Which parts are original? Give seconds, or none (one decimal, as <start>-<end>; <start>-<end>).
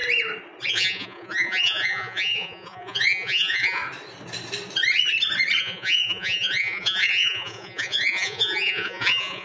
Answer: 0.0-0.7; 3.8-5.6